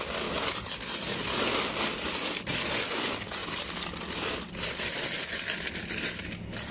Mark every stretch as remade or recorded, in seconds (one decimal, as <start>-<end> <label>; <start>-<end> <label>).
0.0-6.7 recorded